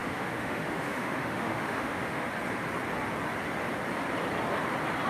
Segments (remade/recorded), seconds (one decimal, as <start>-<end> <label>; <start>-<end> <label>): 0.0-2.3 remade; 2.3-5.1 recorded